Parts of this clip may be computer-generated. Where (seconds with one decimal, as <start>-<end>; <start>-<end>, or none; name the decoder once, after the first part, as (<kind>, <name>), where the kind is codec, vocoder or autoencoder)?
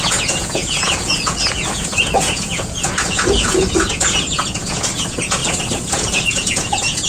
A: 0.0-5.4 (vocoder, Vocos); 5.9-7.1